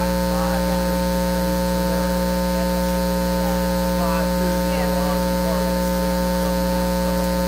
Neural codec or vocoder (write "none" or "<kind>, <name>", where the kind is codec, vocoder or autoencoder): none